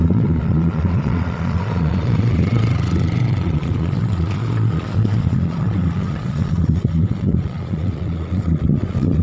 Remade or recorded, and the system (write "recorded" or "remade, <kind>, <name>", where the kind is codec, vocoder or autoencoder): remade, vocoder, Vocos